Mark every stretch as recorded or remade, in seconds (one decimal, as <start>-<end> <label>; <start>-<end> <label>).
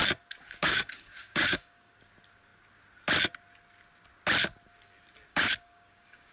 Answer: 0.0-0.4 recorded; 0.4-1.9 remade; 1.9-5.3 recorded; 5.3-6.3 remade